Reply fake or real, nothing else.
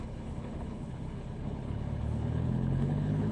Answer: fake